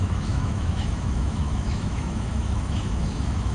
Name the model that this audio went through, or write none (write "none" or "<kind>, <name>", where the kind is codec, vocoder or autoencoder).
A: autoencoder, DAC-VAE